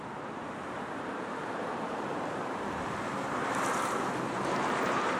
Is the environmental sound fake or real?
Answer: fake